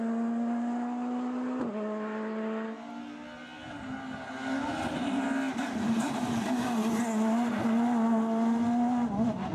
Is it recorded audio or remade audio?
recorded